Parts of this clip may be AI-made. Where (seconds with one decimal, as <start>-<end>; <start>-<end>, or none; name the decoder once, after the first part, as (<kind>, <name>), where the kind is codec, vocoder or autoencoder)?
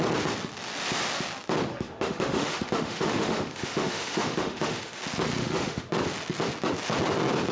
1.7-5.0 (autoencoder, DAC-VAE); 5.4-5.9